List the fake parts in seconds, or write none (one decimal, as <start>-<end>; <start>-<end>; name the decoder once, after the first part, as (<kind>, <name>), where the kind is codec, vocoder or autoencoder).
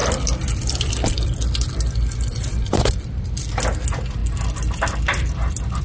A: 0.0-3.5 (vocoder, BigVGAN v2); 4.2-5.8